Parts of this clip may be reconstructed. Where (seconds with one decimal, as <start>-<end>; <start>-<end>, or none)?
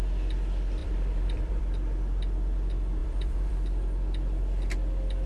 0.8-1.6; 3.0-3.5